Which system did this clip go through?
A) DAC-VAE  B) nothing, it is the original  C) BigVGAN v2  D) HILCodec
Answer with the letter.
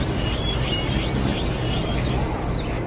B